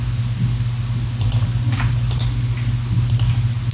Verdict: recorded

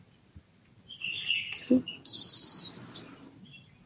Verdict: recorded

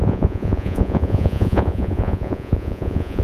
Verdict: remade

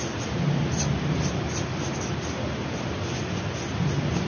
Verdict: recorded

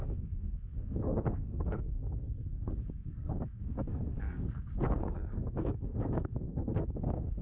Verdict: remade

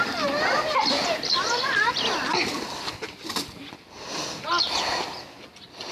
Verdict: recorded